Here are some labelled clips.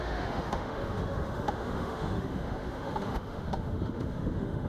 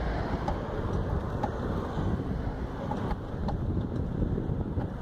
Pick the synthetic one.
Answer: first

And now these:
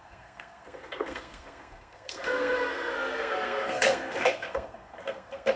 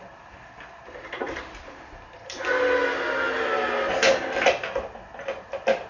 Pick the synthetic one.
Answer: first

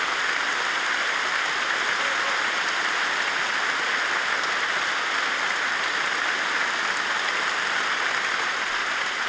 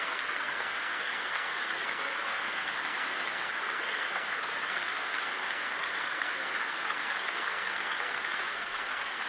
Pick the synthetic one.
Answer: second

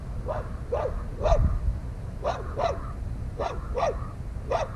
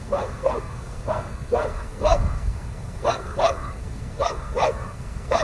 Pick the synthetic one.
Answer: second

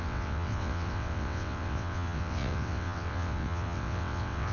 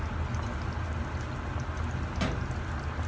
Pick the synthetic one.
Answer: first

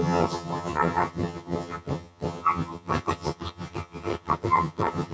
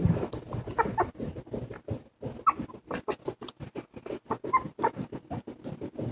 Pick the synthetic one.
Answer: first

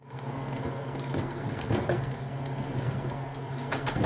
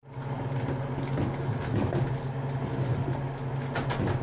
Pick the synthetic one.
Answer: first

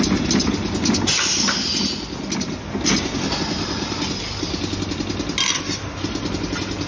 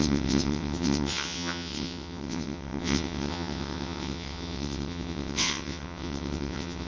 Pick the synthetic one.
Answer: second